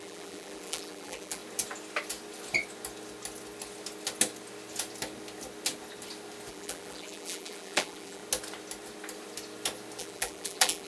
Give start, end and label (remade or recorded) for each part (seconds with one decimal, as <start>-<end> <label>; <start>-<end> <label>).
0.0-1.4 remade; 1.4-6.5 recorded; 6.5-8.2 remade; 8.2-10.0 recorded; 10.0-10.9 remade